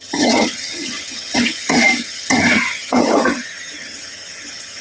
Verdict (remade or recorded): remade